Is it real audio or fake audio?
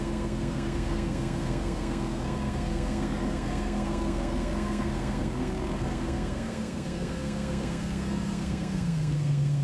fake